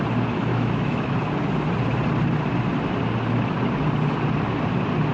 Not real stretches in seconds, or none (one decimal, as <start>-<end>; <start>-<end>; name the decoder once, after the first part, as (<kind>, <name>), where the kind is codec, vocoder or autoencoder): 0.5-1.1 (autoencoder, DAC-VAE)